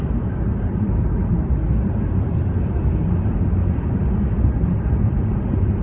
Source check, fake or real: real